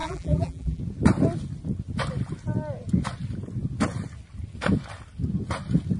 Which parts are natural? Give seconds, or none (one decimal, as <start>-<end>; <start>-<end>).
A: 0.8-6.0